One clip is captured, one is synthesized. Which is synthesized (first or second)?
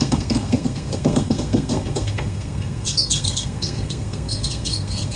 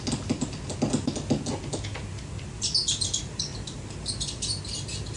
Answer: first